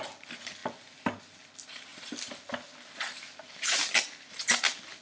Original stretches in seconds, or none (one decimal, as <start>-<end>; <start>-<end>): 0.0-5.0